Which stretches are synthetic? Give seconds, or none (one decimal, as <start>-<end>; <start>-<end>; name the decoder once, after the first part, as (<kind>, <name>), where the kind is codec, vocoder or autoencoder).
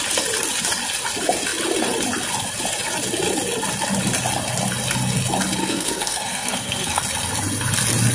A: 5.6-7.0 (codec, SNAC)